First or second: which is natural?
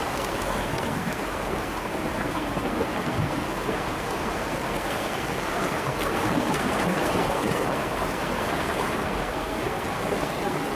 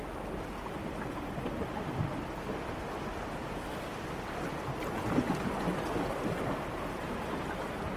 second